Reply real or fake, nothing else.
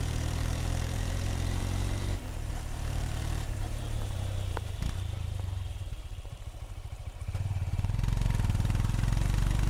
fake